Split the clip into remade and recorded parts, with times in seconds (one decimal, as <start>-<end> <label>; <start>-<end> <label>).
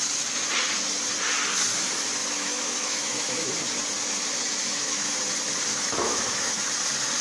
0.0-2.2 recorded; 2.2-3.5 remade; 3.5-4.6 recorded; 4.6-5.2 remade; 5.2-5.7 recorded; 5.7-6.6 remade; 6.6-7.2 recorded